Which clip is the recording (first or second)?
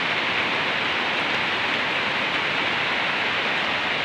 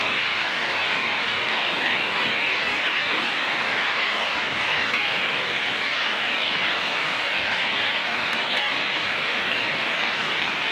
first